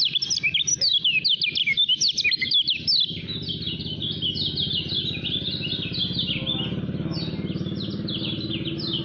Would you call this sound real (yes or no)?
yes